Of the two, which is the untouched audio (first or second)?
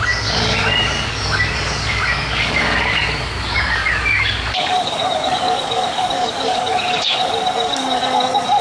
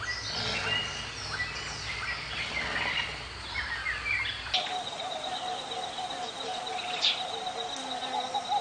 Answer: second